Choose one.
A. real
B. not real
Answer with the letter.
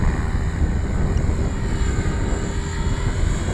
A